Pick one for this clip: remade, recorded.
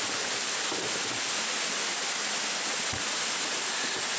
recorded